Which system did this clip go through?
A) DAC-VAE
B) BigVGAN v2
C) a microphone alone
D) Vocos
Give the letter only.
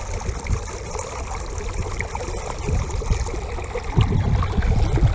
C